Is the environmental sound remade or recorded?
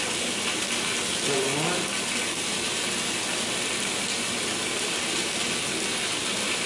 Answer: recorded